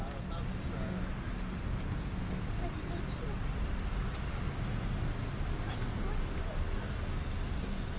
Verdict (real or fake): real